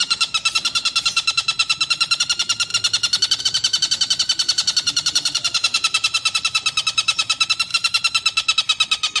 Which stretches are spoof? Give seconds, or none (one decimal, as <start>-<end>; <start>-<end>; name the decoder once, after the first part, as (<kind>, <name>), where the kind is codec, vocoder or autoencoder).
0.0-2.7 (vocoder, BigVGAN v2); 3.4-7.7